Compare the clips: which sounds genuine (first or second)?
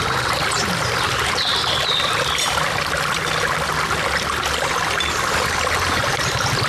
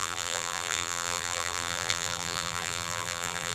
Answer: first